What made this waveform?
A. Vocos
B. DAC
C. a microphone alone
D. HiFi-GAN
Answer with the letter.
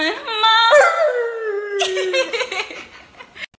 C